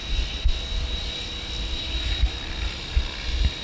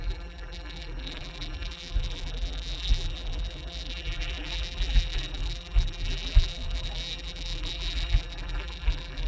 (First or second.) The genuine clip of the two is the first